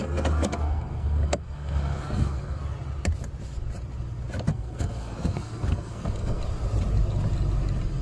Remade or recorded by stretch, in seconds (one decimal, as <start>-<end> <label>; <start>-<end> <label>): 0.0-2.6 remade; 2.6-4.5 recorded; 4.5-6.4 remade; 6.4-8.0 recorded